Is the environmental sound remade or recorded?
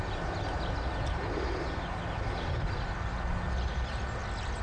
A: recorded